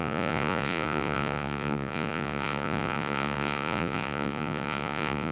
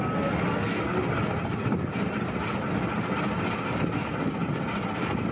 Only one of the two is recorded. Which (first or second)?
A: second